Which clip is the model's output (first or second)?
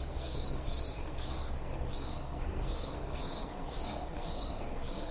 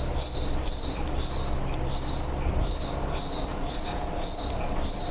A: first